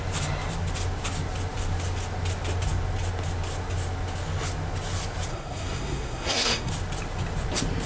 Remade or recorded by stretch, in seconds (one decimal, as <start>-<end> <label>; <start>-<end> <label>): 0.0-5.3 recorded; 5.3-6.7 remade; 6.7-7.9 recorded